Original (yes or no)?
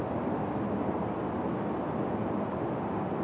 yes